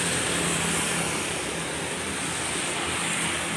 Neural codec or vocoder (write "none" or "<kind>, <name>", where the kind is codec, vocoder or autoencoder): none